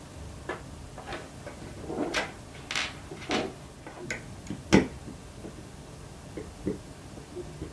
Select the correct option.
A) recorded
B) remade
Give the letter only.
A